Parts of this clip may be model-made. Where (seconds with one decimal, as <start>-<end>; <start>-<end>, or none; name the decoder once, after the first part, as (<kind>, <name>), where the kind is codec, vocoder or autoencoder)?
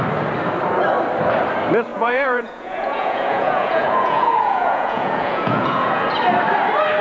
1.9-6.1 (vocoder, Vocos)